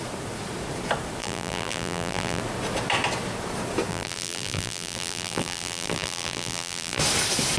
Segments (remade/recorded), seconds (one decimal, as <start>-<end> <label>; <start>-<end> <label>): 0.0-1.2 recorded; 1.2-2.4 remade; 2.4-3.9 recorded; 3.9-7.0 remade; 7.0-7.6 recorded